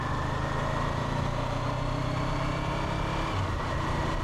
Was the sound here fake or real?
real